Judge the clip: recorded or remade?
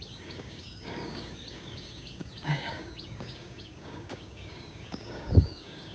remade